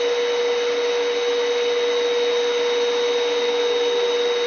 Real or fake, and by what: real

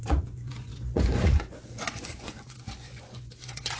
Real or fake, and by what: fake, vocoder, Vocos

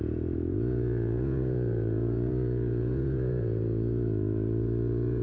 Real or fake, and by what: fake, vocoder, Vocos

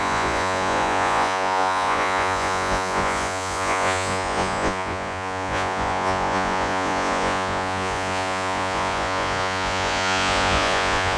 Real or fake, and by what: fake, vocoder, Vocos